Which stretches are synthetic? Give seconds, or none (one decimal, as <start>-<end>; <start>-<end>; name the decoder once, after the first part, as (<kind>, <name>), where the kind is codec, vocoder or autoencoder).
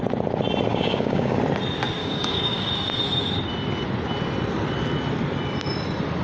0.7-1.4 (codec, DAC); 2.0-2.7